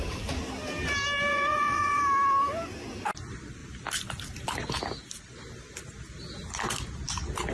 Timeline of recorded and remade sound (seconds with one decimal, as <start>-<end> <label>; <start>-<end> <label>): 0.0-1.3 recorded; 1.3-2.0 remade; 2.0-7.5 recorded